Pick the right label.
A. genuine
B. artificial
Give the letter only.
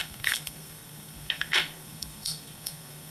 B